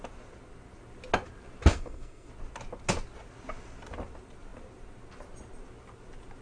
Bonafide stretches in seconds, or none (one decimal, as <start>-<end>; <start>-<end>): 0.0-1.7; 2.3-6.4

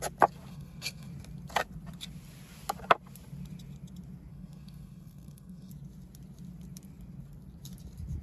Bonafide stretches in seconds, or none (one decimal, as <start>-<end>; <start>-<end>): 0.0-0.5; 1.1-4.3; 5.7-8.2

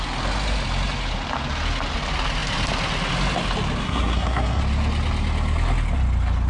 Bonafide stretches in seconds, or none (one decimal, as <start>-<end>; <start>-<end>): 0.0-3.8; 4.6-6.5

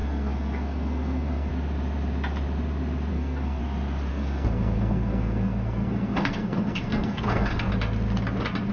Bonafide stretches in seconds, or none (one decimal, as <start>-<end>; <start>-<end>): 1.5-3.1; 3.6-4.1; 7.7-8.7

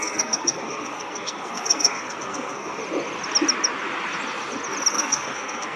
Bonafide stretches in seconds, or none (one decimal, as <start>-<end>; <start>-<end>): 2.8-4.9

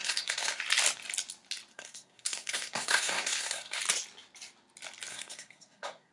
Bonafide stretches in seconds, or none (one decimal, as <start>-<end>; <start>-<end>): 0.6-1.7; 3.8-5.1

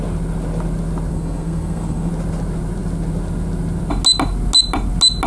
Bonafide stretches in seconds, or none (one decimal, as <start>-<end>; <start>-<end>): 0.0-1.1; 2.1-5.3

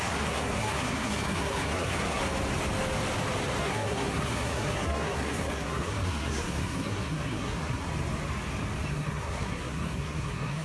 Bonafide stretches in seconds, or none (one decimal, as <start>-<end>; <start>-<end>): 2.2-3.6; 7.9-8.9